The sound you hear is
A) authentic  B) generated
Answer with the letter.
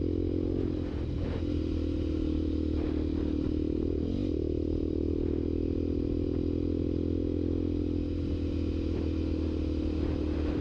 A